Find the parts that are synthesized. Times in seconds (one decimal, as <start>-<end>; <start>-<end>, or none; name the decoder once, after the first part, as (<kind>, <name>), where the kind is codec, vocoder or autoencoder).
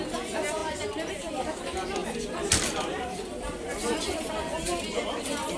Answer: 2.0-4.3 (vocoder, BigVGAN v2)